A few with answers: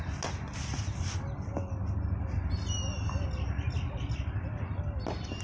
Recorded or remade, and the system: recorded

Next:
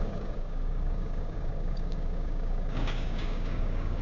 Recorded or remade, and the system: remade, codec, DAC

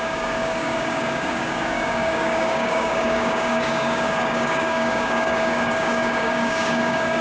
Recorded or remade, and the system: remade, codec, DAC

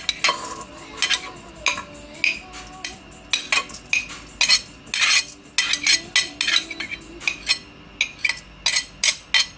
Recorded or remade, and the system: recorded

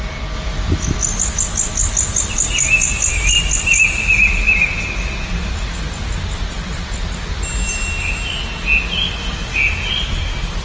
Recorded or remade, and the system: recorded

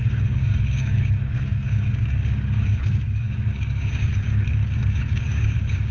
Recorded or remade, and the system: remade, codec, DAC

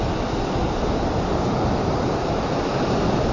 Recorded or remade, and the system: recorded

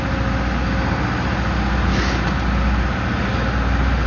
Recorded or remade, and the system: recorded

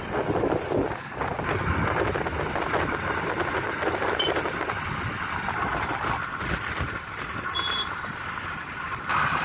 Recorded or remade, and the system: recorded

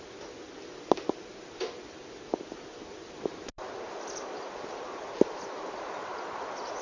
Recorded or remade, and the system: recorded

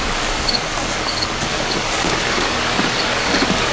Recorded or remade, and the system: remade, codec, DAC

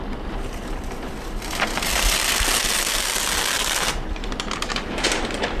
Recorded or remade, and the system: recorded